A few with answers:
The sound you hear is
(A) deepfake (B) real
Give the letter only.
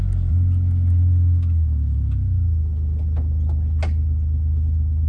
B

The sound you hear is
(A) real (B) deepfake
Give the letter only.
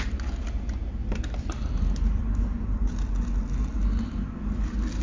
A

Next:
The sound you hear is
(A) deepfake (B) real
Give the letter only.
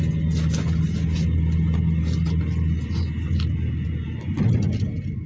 B